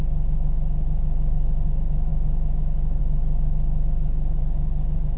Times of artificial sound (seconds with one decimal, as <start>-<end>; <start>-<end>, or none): none